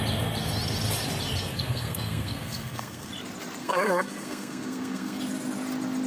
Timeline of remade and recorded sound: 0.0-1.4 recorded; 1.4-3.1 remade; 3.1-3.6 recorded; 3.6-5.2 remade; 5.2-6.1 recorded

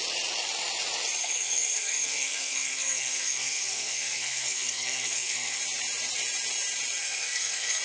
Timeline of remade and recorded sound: 0.0-1.2 recorded; 1.2-5.6 remade; 5.6-7.0 recorded; 7.0-7.8 remade

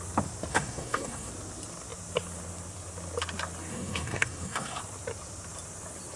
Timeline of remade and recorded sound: 0.0-0.5 recorded; 0.5-1.3 remade; 1.3-3.7 recorded; 3.7-4.8 remade; 4.8-6.2 recorded

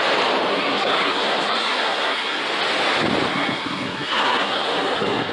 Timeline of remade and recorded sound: 0.0-0.5 recorded; 0.5-2.4 remade; 2.4-3.3 recorded; 3.3-5.3 remade

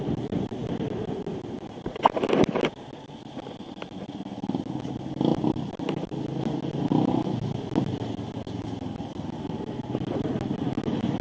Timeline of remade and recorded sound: 0.0-11.2 recorded

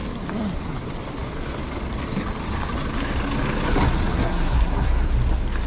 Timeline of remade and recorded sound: 0.0-4.1 recorded; 4.1-4.9 remade; 4.9-5.7 recorded

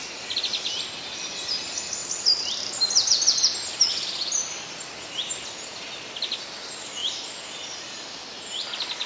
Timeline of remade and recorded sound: 0.0-9.1 recorded